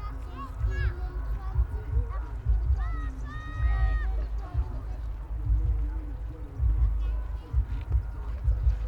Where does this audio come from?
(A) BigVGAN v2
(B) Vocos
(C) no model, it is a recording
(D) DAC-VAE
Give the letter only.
C